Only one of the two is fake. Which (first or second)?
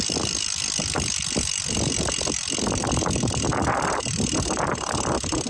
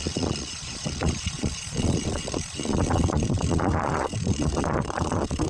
second